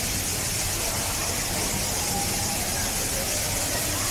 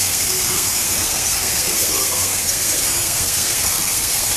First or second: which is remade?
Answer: second